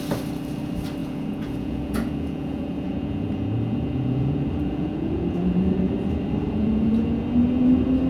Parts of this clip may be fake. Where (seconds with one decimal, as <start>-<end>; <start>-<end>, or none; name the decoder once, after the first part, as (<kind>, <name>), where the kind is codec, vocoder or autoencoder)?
1.0-5.9 (vocoder, Vocos); 6.4-7.2